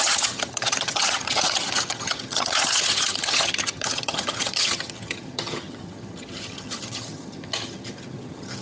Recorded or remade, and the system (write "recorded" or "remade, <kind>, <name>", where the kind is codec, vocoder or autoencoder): remade, vocoder, HiFi-GAN